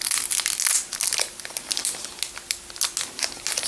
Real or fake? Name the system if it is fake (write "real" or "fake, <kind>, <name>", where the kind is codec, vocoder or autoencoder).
real